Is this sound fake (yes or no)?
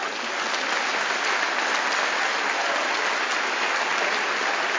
yes